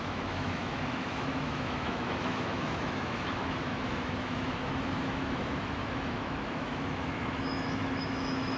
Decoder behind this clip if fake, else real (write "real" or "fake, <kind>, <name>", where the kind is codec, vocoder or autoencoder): fake, autoencoder, DAC-VAE